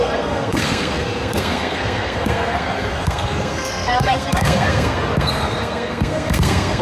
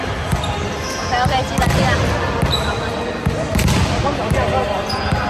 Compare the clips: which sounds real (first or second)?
second